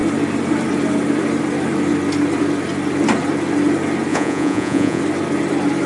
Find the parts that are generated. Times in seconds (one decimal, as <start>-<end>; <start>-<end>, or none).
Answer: 4.1-5.0